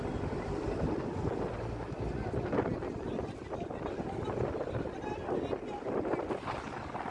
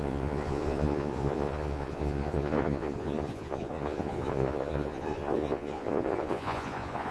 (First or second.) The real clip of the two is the first